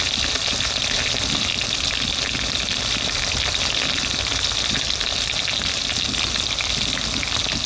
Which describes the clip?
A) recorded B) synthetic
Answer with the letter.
A